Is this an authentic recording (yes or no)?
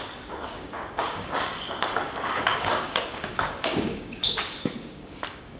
no